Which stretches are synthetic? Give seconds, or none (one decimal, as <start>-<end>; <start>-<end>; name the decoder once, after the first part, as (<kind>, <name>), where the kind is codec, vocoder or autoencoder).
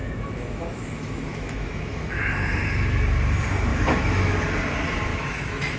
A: 0.0-2.2 (autoencoder, DAC-VAE); 3.7-4.4; 5.1-5.8